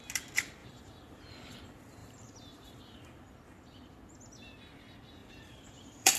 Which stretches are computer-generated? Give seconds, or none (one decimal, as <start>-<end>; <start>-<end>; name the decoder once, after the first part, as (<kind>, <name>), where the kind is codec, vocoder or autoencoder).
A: 0.6-1.2 (vocoder, BigVGAN v2); 2.0-2.7; 5.2-6.2